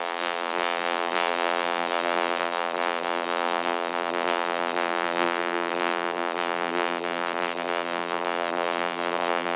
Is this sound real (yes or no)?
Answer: no